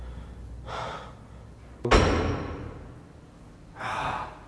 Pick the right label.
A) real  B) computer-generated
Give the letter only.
A